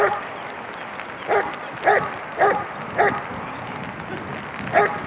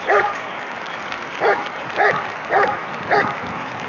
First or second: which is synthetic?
second